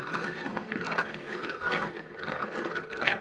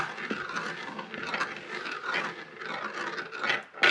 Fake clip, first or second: first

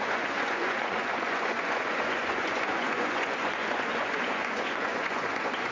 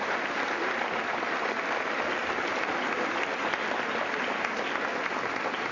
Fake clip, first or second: first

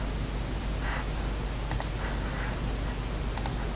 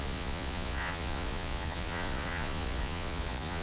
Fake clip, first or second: second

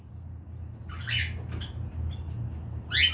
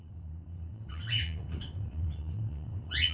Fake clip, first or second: second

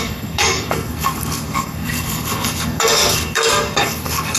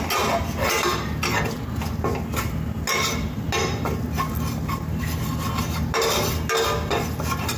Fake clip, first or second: first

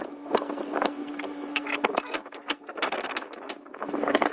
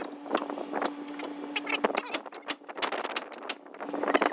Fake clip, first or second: first